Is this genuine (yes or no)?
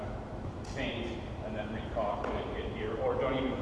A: no